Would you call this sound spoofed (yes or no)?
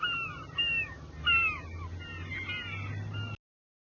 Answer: no